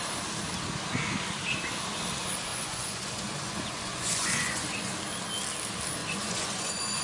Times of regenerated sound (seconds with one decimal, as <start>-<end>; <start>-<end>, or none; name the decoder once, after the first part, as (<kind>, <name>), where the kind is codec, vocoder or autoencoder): 2.5-4.9 (vocoder, Vocos); 6.0-7.0